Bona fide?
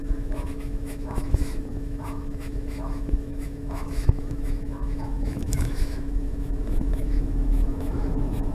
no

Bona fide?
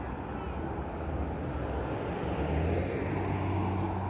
yes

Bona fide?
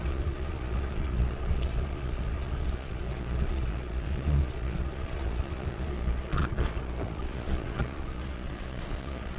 no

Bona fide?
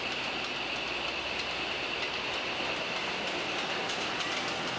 yes